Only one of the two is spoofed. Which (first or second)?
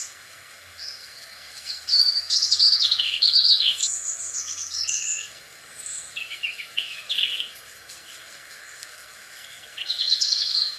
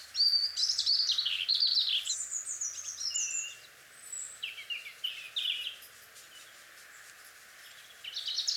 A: first